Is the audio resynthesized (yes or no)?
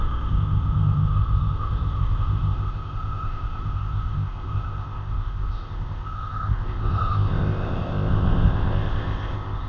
yes